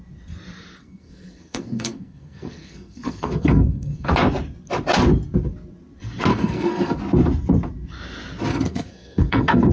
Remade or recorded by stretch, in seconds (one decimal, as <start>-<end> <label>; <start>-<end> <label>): 0.0-0.8 recorded; 0.8-4.1 remade; 4.1-6.3 recorded; 6.3-7.0 remade; 7.0-8.5 recorded; 8.5-9.7 remade